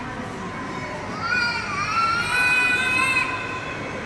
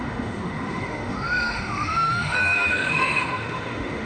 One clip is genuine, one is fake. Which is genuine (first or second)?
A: first